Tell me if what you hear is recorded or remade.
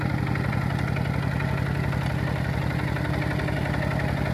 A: recorded